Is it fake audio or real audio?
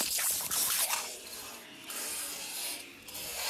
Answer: real